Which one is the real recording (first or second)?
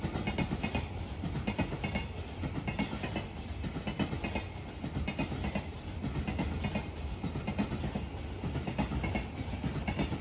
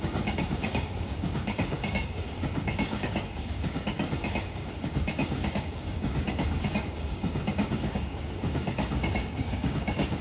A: first